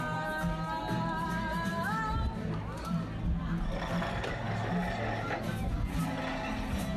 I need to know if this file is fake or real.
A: real